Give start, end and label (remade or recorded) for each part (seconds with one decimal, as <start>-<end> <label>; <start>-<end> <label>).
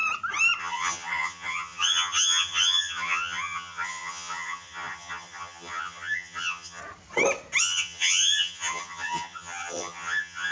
0.0-0.6 recorded; 0.6-6.8 remade; 6.8-7.6 recorded; 7.6-10.5 remade